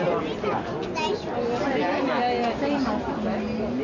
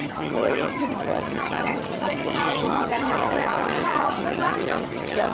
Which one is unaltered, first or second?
first